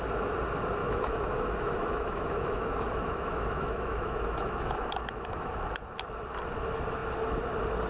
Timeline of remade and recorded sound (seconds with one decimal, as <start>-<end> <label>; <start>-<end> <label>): 0.0-0.8 recorded; 0.8-5.5 remade; 5.5-7.9 recorded